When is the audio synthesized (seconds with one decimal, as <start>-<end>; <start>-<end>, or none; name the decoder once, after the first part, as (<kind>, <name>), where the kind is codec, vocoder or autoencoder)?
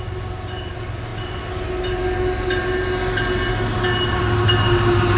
none